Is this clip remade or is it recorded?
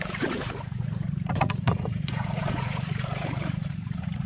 remade